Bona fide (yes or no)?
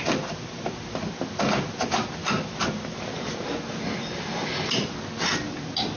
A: yes